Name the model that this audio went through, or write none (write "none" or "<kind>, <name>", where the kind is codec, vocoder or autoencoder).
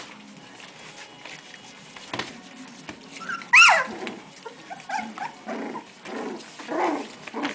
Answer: none